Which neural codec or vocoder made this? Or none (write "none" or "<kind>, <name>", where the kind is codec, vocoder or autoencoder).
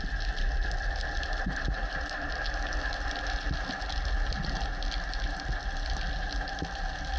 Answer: none